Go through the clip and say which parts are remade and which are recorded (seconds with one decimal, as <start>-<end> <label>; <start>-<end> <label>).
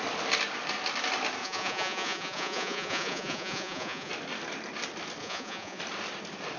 0.0-1.4 recorded; 1.4-4.1 remade; 4.1-5.2 recorded; 5.2-5.8 remade; 5.8-6.6 recorded